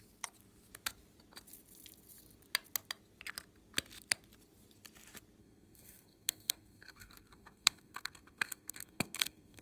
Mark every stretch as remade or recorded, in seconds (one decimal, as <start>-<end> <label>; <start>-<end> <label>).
0.0-5.4 recorded; 5.4-9.6 remade